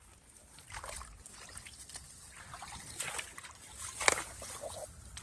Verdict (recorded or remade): recorded